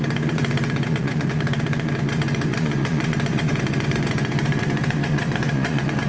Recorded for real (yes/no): no